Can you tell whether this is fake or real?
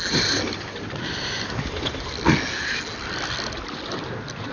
real